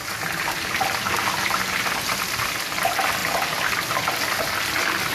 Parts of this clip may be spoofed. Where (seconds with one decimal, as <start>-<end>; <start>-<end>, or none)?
none